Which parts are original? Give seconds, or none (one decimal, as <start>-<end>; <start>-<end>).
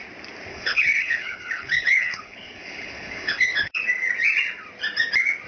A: 0.0-0.5; 3.8-5.5